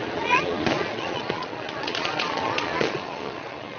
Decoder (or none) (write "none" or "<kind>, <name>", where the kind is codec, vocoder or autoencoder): vocoder, Vocos